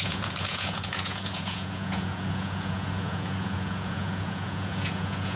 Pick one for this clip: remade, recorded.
remade